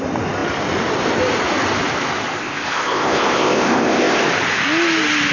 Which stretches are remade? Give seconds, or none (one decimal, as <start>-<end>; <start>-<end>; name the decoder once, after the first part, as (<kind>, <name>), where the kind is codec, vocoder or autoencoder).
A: 2.4-4.2 (codec, ZipCodec)